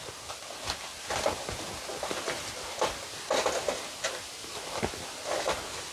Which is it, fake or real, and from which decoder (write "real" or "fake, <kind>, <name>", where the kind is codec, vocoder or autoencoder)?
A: real